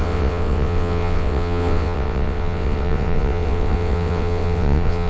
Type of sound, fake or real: fake